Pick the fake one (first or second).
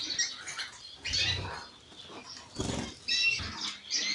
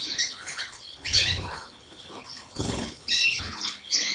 second